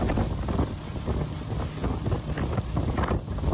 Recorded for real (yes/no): yes